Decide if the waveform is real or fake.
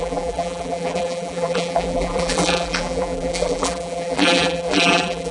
fake